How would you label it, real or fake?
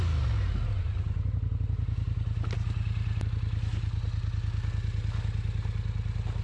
real